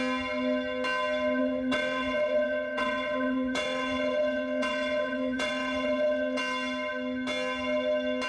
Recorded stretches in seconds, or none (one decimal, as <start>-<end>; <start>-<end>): 0.0-1.4; 6.4-8.3